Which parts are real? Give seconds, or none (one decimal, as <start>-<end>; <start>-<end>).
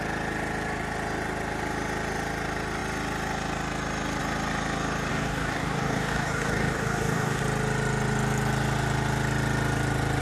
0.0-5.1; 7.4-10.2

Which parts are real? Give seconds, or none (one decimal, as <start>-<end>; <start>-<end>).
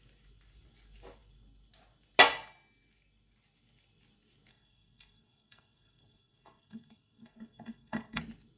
0.0-4.5; 8.2-8.6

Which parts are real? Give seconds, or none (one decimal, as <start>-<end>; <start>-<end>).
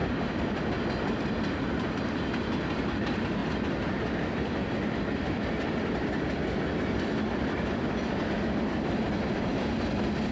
0.0-9.5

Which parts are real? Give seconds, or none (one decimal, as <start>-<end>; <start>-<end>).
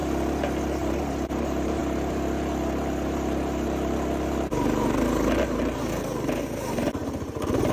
0.0-1.1; 1.8-5.6